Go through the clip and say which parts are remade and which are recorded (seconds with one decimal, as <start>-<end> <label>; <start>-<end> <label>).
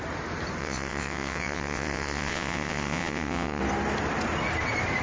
0.0-0.6 recorded; 0.6-3.6 remade; 3.6-5.0 recorded